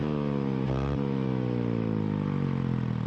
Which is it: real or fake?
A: real